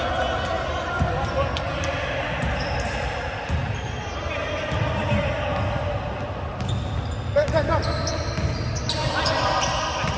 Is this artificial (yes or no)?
no